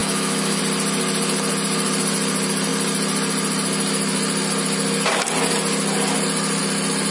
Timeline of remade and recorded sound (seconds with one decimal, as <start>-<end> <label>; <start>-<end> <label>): 0.0-0.6 remade; 0.6-7.1 recorded